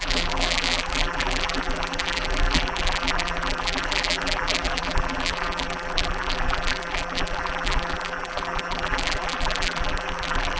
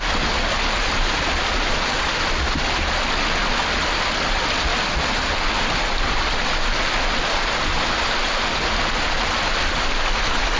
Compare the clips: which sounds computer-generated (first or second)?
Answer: first